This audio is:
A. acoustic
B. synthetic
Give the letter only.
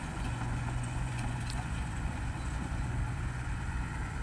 B